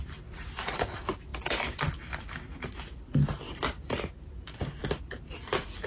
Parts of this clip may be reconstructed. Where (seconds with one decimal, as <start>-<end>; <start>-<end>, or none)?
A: none